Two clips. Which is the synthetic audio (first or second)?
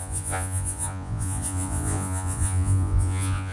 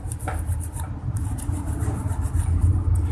first